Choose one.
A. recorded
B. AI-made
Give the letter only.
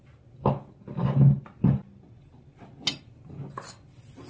A